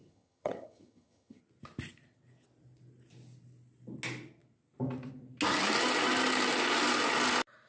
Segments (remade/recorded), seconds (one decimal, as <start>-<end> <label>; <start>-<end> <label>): 0.0-1.4 remade; 1.4-7.7 recorded